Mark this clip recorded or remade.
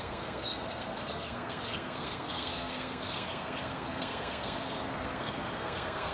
remade